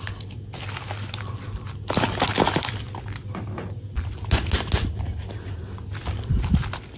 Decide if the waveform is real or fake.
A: real